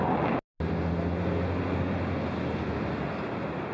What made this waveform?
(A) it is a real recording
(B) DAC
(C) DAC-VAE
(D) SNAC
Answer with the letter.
A